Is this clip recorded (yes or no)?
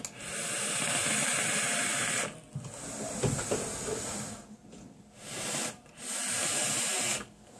yes